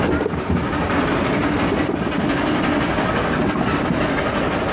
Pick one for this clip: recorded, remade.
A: recorded